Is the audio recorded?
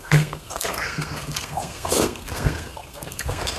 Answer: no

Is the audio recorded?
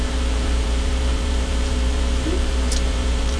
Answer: no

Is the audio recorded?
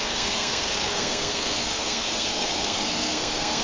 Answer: no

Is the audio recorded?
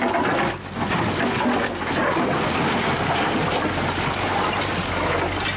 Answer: yes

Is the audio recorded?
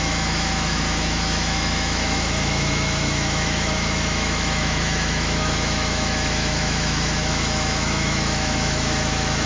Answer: no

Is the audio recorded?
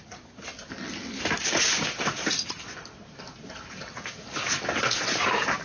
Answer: yes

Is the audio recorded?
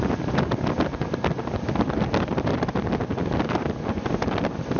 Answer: yes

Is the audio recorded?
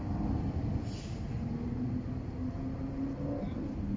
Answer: yes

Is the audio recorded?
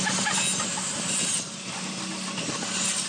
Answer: yes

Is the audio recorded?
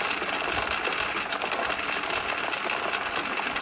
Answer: yes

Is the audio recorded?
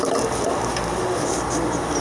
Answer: yes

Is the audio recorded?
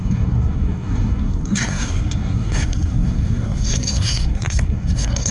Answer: no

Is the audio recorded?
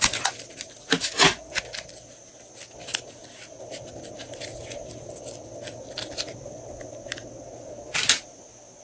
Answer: yes